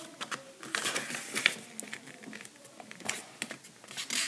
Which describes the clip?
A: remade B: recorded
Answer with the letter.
B